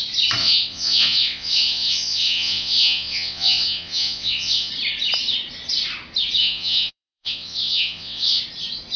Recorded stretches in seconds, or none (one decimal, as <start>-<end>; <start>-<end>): 0.0-0.4; 4.7-6.4; 8.4-9.0